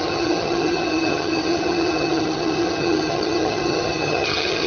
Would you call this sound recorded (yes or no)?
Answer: no